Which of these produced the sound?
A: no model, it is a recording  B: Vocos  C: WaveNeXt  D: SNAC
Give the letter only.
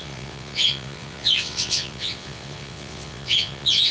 C